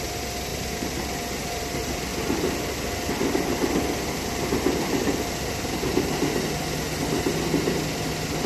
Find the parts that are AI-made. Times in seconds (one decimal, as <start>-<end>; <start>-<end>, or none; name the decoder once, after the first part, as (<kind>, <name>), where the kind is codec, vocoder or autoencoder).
0.5-1.4 (vocoder, BigVGAN v2); 2.1-6.0; 7.3-8.5